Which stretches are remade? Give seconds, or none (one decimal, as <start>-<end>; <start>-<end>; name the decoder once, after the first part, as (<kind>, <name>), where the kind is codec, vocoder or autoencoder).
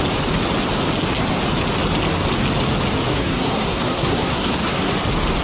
3.1-4.9 (codec, SNAC)